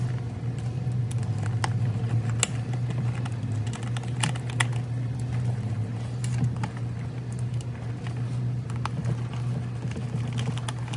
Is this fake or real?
real